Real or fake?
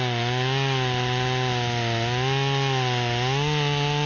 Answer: real